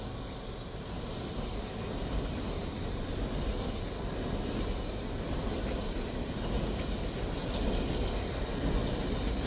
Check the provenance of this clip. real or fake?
real